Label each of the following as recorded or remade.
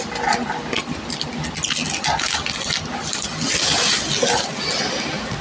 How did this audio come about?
recorded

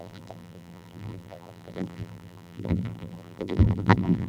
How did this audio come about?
remade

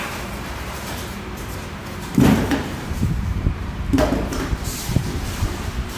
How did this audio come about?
remade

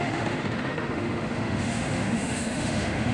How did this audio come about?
remade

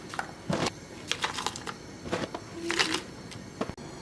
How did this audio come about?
recorded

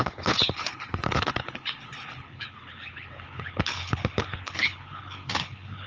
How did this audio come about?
remade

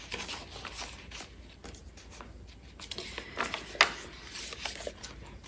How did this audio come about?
recorded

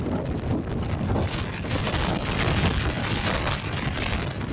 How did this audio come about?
recorded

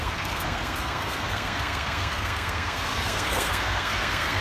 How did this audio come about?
remade